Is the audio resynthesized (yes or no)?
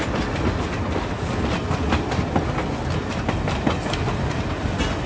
no